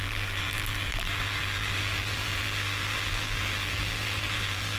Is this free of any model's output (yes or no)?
no